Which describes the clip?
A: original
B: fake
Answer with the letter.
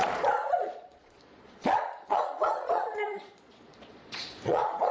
B